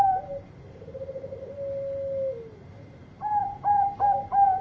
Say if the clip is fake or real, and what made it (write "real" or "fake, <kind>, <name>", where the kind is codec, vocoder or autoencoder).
real